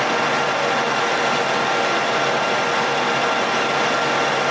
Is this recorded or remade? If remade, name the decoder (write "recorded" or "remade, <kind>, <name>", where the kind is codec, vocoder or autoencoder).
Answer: recorded